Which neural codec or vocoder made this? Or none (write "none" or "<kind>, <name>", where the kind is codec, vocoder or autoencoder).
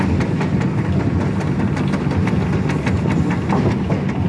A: none